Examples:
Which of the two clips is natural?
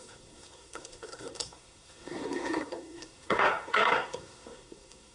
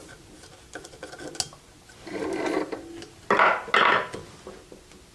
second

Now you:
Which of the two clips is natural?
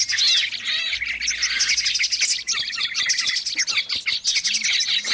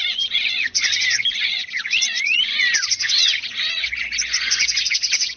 first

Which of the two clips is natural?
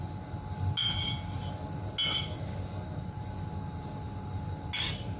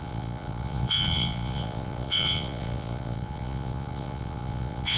first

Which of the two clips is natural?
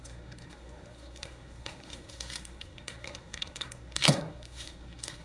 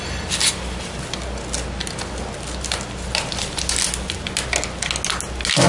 second